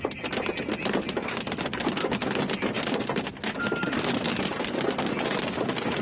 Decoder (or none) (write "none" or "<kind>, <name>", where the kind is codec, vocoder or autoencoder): none